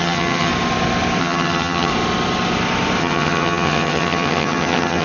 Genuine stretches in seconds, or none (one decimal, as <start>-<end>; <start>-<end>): 0.5-1.2; 1.9-3.0